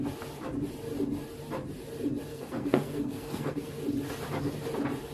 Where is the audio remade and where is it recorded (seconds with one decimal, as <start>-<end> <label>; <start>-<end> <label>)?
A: 0.0-2.3 recorded; 2.3-3.8 remade; 3.8-5.1 recorded